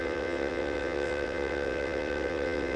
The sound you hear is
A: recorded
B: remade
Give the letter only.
B